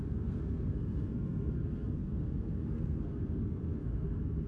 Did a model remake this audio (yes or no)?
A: yes